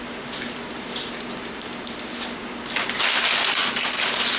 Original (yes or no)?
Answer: yes